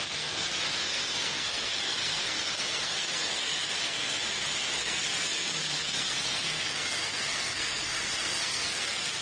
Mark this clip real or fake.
fake